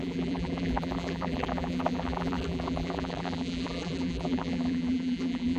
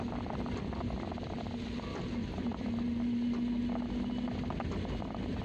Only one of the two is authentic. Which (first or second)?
second